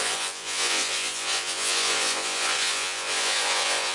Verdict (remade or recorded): remade